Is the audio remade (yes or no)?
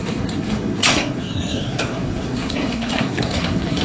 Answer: yes